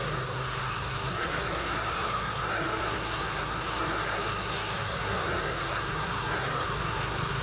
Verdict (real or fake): fake